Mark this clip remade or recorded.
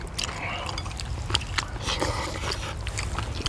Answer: recorded